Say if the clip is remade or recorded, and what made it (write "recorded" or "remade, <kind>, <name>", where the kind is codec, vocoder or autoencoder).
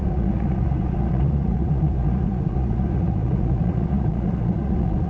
remade, vocoder, Vocos